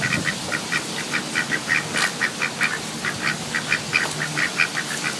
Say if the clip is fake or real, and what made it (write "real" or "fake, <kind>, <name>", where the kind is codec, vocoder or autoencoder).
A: real